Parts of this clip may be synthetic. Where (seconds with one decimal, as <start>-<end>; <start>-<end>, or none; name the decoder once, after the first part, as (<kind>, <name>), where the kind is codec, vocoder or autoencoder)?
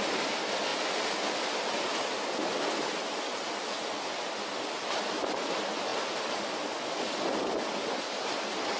none